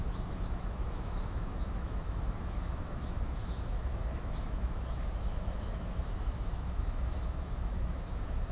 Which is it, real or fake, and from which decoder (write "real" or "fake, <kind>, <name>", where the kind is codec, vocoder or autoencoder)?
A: fake, autoencoder, DAC-VAE